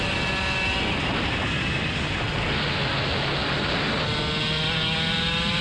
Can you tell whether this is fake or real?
real